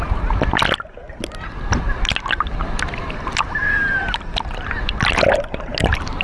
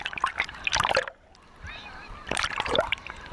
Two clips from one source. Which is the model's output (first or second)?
second